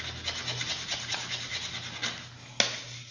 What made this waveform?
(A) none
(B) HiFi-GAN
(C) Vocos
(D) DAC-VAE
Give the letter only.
A